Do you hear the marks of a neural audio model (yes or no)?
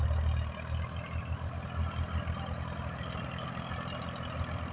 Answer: no